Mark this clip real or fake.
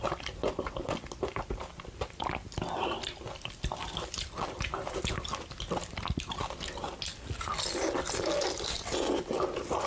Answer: real